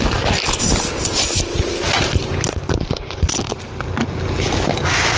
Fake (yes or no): no